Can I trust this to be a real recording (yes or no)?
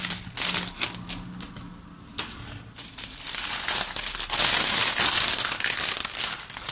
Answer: yes